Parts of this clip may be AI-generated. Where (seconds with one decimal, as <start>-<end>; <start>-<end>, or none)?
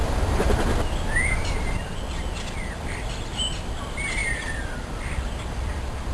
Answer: 0.0-6.1